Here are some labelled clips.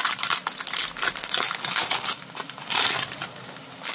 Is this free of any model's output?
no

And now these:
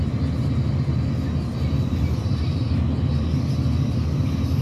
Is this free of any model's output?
yes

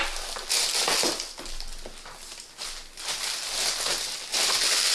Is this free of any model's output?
yes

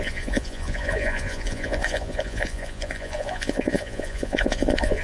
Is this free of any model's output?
no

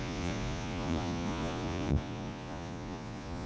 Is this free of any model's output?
no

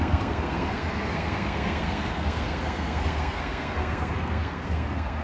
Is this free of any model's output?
no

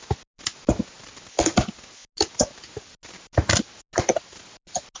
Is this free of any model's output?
yes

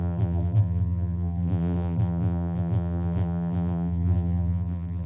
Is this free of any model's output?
no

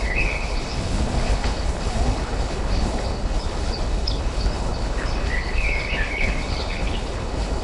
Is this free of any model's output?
no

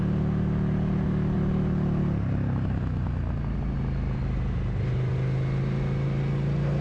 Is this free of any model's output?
yes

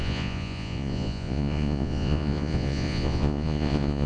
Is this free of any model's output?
no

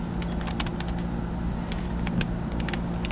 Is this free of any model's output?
yes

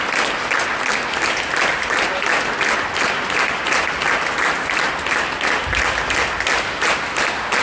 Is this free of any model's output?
yes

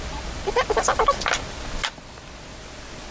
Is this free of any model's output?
yes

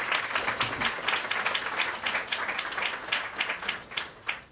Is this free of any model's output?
yes